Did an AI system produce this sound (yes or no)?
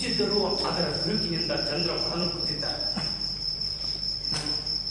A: yes